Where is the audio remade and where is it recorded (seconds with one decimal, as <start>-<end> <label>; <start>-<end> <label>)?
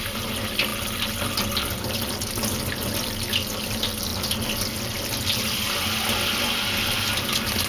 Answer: 0.0-7.7 recorded